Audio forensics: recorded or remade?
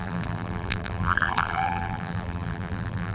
remade